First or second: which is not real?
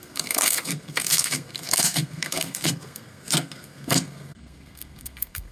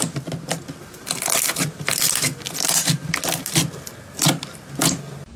first